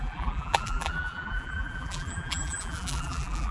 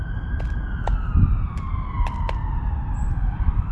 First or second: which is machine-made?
first